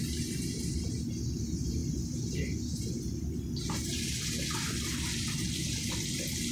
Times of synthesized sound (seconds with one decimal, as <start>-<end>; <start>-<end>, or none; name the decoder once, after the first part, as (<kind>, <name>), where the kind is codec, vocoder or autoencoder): none

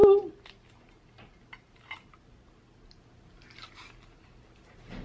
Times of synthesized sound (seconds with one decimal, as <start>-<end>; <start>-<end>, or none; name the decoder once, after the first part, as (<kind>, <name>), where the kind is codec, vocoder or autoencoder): none

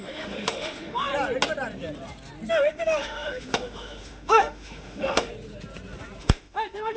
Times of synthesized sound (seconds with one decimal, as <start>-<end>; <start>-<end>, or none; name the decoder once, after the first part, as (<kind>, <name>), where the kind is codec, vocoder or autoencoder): 0.0-1.1 (autoencoder, DAC-VAE); 2.5-5.3; 6.2-7.0

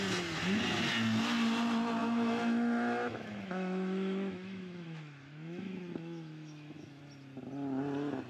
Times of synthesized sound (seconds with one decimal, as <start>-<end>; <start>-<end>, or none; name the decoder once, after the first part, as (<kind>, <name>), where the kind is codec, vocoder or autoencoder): 2.0-7.0 (autoencoder, DAC-VAE)

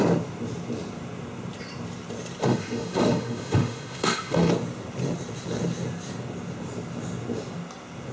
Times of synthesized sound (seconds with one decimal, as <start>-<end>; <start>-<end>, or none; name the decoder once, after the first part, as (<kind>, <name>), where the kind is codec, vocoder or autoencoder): 2.4-4.5 (autoencoder, DAC-VAE)

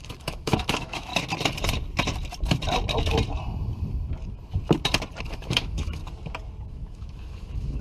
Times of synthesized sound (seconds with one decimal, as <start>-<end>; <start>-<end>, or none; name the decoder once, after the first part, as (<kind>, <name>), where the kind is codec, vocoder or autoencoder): 0.0-1.1 (autoencoder, DAC-VAE); 5.2-6.0; 6.7-7.8

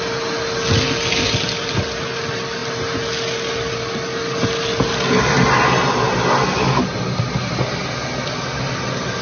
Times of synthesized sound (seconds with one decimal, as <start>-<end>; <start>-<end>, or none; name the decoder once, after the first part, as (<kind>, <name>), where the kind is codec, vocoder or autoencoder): none